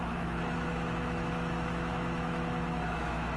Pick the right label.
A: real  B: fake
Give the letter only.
B